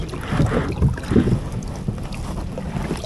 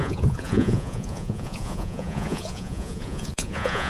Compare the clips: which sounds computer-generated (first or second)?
second